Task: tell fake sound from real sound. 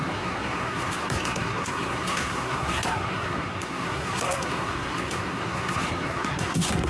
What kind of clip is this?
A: fake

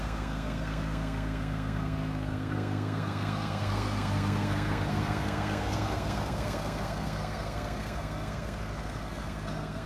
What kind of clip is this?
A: fake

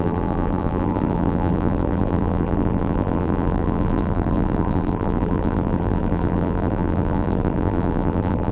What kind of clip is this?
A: fake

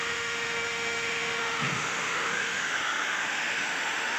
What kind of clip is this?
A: fake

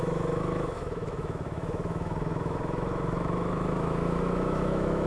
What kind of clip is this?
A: fake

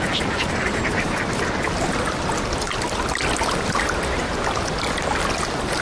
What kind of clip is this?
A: real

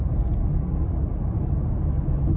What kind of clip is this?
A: real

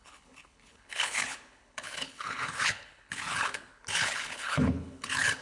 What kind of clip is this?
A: fake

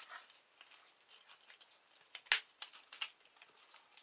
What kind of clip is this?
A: real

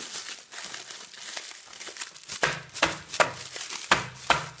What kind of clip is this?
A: real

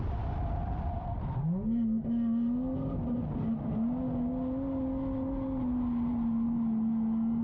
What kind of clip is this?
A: real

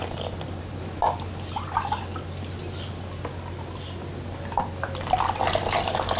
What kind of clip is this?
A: real